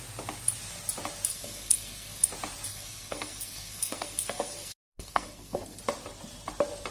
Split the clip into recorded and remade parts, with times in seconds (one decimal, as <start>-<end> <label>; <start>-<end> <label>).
0.0-1.3 recorded; 1.3-2.3 remade; 2.3-2.7 recorded; 2.7-5.8 remade; 5.8-6.9 recorded